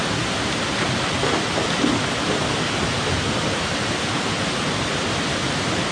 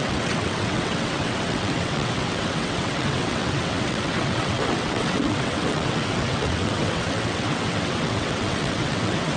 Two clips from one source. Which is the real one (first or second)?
first